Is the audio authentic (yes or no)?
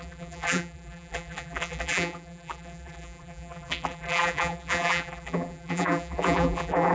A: no